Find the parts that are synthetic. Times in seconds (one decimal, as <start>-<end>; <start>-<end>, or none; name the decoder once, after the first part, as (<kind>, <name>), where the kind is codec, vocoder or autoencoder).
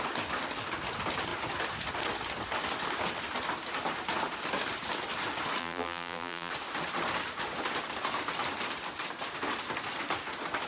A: 5.6-6.5 (vocoder, BigVGAN v2)